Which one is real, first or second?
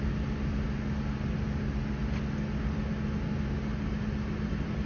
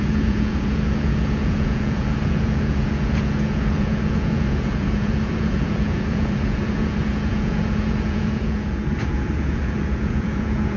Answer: first